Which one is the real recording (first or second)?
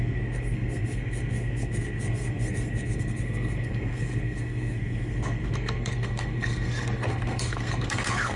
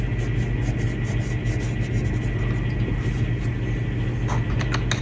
second